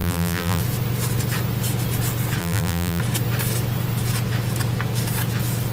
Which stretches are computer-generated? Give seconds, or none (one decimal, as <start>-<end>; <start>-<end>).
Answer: 0.0-0.6; 2.4-3.0